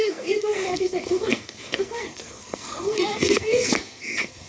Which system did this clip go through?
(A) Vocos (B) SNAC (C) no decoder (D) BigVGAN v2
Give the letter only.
B